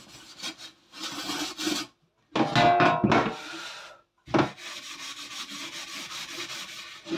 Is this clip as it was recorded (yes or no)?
yes